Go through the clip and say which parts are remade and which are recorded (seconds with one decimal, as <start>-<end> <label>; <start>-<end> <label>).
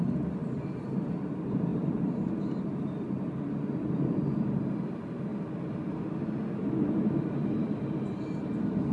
0.0-8.9 recorded